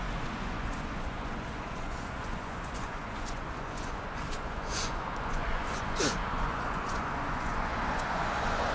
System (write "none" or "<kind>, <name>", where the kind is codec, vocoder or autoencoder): vocoder, Vocos